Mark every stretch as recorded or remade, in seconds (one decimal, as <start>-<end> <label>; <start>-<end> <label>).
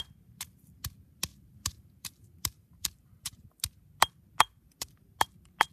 0.0-1.3 recorded; 1.3-3.5 remade; 3.5-5.7 recorded